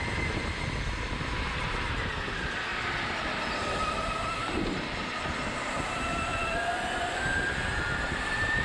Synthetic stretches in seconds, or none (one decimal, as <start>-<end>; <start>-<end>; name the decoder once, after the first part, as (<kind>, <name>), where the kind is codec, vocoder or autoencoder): 6.3-7.2 (vocoder, Vocos)

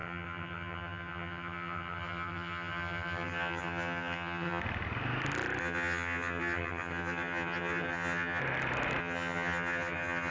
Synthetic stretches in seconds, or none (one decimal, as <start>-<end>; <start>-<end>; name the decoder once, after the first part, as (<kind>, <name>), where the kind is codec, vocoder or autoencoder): 0.0-4.6 (vocoder, HiFi-GAN); 5.6-8.4; 9.0-10.3

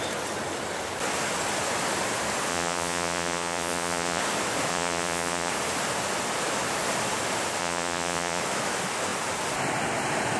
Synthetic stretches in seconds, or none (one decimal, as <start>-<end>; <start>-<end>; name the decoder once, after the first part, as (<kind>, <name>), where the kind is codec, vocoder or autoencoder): 2.5-4.2 (vocoder, Vocos); 4.7-5.5; 7.6-8.4

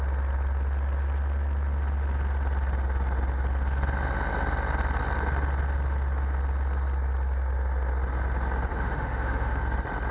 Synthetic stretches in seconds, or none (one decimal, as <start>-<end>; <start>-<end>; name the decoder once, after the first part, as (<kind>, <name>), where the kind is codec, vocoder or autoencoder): 8.7-9.6 (autoencoder, DAC-VAE)

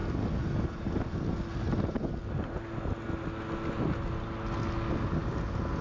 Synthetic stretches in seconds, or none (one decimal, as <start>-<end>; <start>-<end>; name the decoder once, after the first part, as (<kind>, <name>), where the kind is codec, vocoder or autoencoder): none

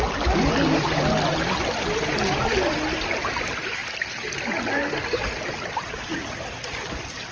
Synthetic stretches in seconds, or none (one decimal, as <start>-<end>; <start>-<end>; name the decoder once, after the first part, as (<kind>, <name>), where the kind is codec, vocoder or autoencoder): none

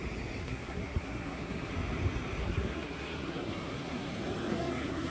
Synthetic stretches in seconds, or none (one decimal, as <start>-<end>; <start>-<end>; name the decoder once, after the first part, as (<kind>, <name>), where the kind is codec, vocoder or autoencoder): 0.4-1.7 (codec, SNAC); 2.4-4.1; 4.5-5.1

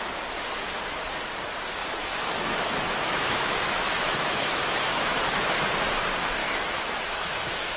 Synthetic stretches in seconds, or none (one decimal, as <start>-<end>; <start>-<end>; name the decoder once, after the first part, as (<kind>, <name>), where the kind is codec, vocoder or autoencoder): 1.8-5.6 (autoencoder, DAC-VAE); 6.4-7.8